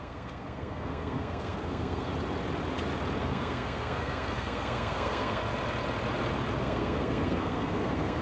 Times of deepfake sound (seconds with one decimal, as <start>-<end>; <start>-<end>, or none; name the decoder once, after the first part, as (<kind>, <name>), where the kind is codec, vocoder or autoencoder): 0.0-2.1 (codec, SNAC); 3.2-5.4; 6.6-8.2